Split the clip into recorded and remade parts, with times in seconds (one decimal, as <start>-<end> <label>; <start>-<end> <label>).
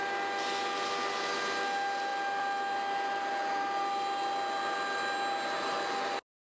0.0-6.5 recorded